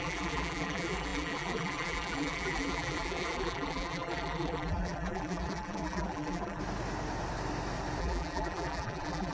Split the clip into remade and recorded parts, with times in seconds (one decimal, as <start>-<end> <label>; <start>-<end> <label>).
0.0-6.6 remade; 6.6-8.0 recorded; 8.0-9.3 remade